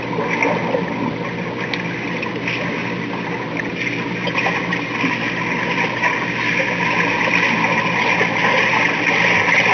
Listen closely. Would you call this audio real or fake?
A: real